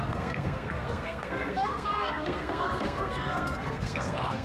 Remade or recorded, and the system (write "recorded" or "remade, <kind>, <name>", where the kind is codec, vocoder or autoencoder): remade, codec, SNAC